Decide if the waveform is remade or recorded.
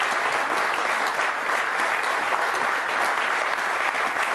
recorded